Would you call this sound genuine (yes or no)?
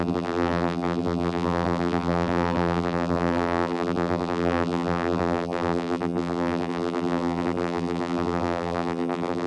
no